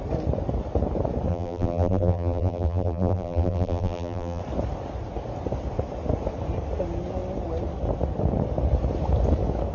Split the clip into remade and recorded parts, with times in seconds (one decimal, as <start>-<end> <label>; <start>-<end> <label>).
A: 0.0-1.3 recorded; 1.3-4.4 remade; 4.4-9.7 recorded